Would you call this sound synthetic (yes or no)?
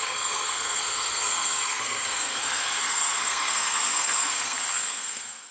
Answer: yes